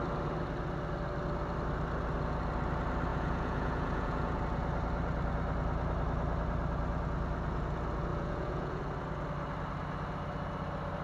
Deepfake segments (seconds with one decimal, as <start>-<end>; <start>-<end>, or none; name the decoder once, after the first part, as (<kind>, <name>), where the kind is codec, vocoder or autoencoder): 3.1-4.4 (vocoder, Vocos); 8.1-8.8